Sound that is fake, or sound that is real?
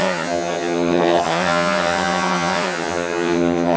fake